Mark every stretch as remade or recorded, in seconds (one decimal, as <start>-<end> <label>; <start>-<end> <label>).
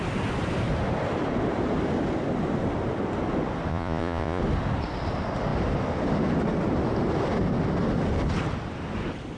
0.0-3.7 recorded; 3.7-4.4 remade; 4.4-9.4 recorded